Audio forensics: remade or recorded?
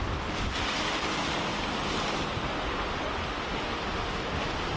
recorded